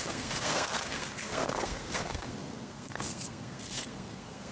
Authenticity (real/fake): fake